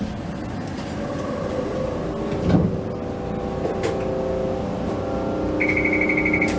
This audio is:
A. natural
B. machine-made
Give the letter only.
A